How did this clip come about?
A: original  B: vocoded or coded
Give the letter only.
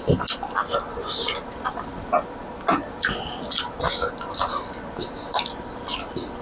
A